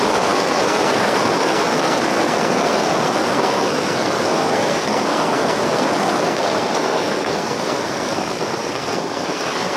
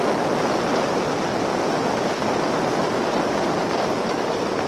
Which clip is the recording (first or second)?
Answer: second